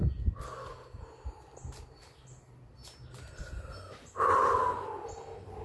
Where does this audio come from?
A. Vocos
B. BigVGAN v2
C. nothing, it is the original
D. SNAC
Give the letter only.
C